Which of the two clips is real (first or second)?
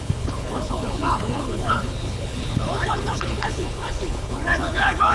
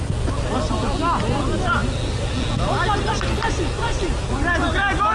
second